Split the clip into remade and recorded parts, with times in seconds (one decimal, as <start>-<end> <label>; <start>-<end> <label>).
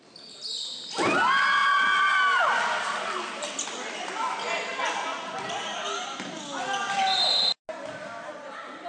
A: 0.0-8.9 recorded